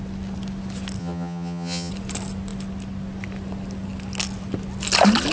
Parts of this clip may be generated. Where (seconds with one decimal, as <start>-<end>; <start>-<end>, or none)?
1.0-1.9